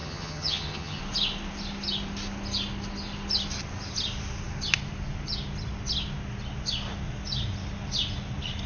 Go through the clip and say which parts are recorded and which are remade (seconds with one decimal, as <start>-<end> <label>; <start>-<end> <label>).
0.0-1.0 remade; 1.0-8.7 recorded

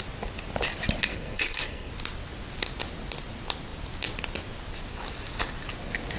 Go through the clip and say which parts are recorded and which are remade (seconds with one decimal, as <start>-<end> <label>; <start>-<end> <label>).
0.0-1.1 recorded; 1.1-1.9 remade; 1.9-6.2 recorded

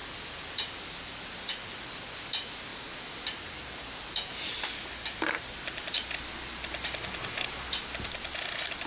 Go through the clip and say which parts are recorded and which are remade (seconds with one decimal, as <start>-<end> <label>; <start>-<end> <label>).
0.0-1.9 remade; 1.9-2.7 recorded; 2.7-7.8 remade; 7.8-8.9 recorded